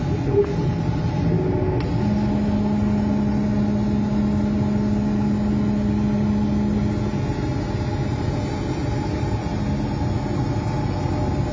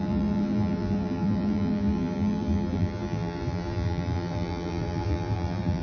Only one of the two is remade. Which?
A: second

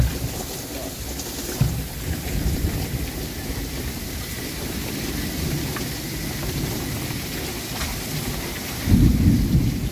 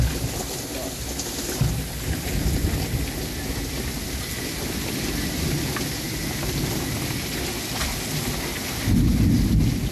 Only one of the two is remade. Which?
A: first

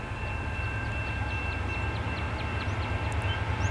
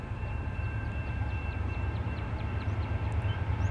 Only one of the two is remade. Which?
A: second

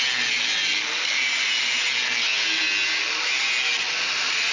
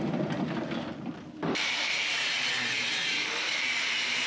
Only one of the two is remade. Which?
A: second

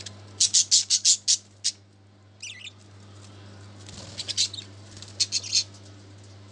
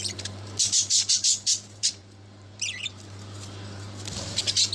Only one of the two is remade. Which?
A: second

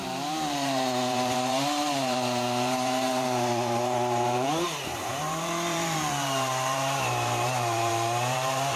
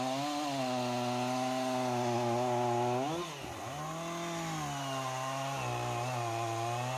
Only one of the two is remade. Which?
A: first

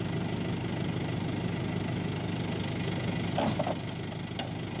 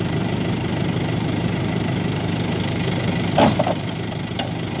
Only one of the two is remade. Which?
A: second